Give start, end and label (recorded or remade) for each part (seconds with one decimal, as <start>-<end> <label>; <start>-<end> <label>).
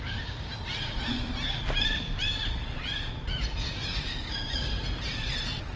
0.0-0.5 remade; 0.5-4.0 recorded; 4.0-4.7 remade; 4.7-5.8 recorded